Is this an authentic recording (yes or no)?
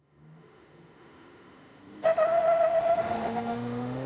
no